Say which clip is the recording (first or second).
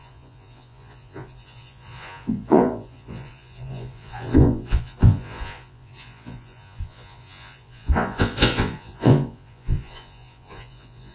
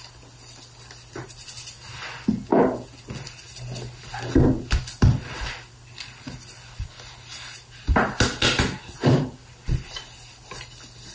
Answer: second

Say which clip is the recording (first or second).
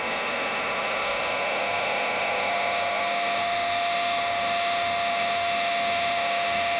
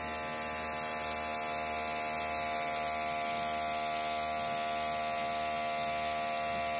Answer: second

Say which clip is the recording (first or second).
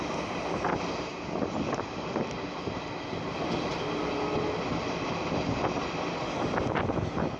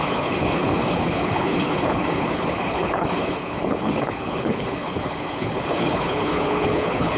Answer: first